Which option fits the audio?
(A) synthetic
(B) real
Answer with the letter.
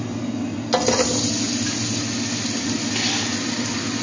B